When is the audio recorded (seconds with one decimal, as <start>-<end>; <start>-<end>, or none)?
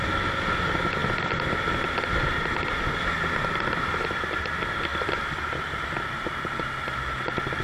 0.0-4.9; 6.7-7.6